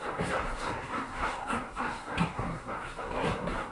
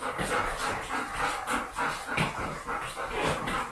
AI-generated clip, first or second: first